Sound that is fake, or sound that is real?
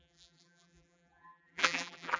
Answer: fake